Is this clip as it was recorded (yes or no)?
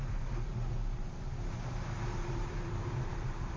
no